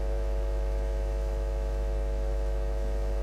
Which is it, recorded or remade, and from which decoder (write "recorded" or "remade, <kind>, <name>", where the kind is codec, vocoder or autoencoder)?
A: remade, autoencoder, DAC-VAE